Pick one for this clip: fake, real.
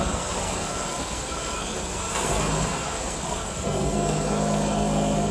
fake